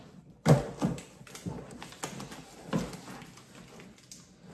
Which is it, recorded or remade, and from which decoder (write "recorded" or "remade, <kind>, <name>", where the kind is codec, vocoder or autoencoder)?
recorded